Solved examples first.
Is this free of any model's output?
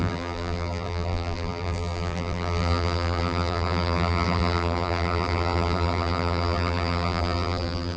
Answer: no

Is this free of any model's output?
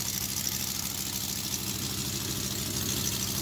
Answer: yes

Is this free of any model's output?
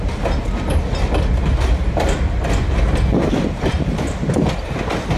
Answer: yes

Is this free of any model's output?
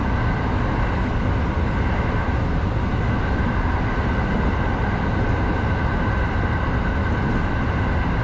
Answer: yes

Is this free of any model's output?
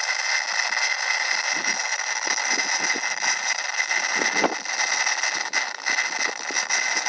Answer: yes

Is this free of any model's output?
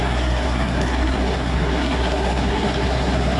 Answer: no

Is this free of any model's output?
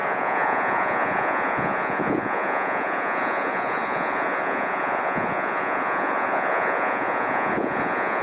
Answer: no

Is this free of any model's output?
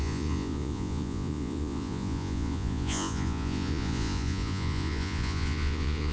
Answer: no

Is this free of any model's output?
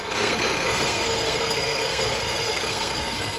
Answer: no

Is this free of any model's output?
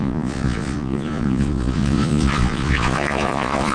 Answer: no